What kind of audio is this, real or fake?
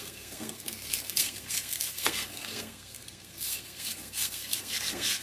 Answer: fake